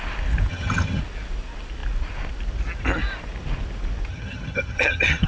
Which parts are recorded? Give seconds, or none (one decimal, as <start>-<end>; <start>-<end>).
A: 0.0-0.5; 1.0-4.1